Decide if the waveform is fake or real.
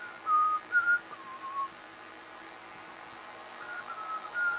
fake